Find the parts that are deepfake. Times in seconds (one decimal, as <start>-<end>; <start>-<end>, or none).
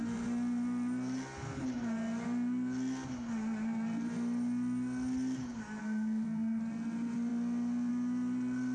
5.8-6.6